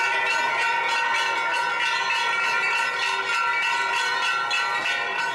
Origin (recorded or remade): recorded